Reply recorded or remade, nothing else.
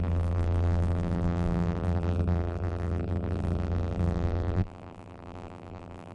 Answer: remade